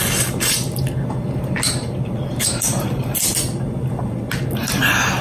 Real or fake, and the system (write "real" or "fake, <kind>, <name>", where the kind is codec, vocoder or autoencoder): real